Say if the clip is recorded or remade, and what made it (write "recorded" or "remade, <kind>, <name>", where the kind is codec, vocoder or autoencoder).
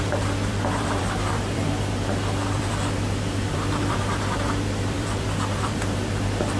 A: remade, vocoder, BigVGAN v2